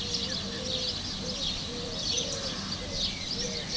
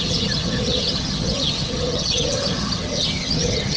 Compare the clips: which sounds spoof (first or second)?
second